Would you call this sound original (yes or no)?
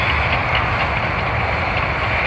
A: yes